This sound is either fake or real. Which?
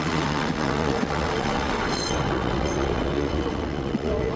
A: fake